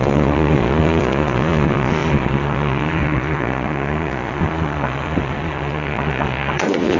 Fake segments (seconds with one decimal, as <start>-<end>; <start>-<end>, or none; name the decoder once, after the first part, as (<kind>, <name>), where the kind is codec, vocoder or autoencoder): 0.0-7.0 (vocoder, Vocos)